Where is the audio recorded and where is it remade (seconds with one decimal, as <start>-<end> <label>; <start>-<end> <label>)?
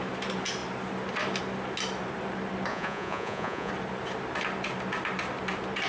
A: 0.0-2.7 recorded; 2.7-3.7 remade; 3.7-5.9 recorded